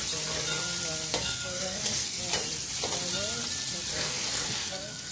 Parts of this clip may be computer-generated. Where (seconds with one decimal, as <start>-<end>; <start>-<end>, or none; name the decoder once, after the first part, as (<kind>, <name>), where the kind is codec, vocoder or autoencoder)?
1.1-2.2 (codec, SNAC); 4.0-5.1